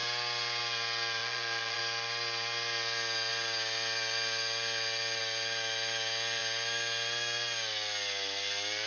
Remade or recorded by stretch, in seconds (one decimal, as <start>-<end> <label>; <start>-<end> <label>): 0.0-1.2 recorded; 1.2-1.8 remade; 1.8-8.9 recorded